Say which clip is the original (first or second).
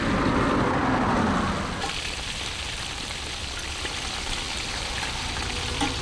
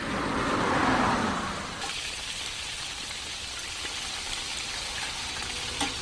first